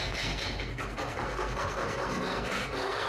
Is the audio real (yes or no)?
no